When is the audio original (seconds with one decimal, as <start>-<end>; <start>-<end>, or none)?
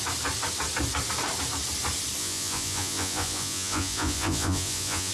0.0-2.2